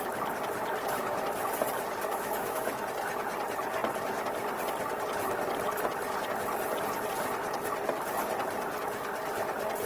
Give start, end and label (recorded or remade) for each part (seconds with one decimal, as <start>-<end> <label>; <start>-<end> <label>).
0.0-2.1 recorded; 2.1-2.8 remade; 2.8-9.9 recorded